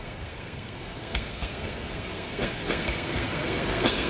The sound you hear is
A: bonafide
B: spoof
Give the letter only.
B